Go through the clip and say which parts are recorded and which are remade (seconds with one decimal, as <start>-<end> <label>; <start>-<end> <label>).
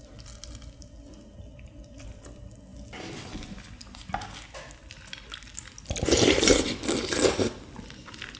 0.0-8.4 recorded